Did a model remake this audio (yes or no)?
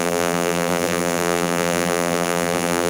yes